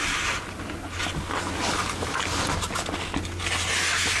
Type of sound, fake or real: real